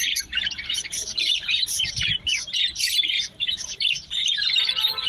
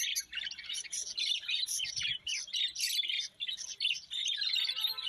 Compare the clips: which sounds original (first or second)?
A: second